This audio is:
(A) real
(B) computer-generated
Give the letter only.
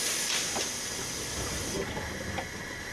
A